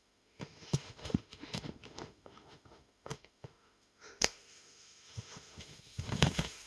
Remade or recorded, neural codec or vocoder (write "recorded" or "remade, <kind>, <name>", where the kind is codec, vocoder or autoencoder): remade, autoencoder, DAC-VAE